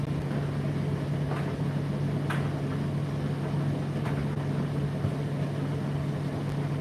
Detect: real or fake real